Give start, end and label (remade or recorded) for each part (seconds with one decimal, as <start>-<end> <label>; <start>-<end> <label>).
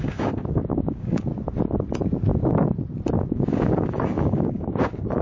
0.0-1.3 remade; 1.3-3.2 recorded; 3.2-5.2 remade